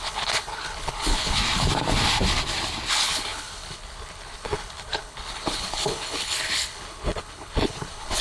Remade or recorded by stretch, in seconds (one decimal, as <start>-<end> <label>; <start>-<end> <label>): 0.0-1.4 remade; 1.4-2.9 recorded; 2.9-8.2 remade